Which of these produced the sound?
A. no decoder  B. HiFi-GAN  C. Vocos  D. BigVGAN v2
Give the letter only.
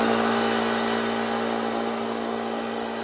A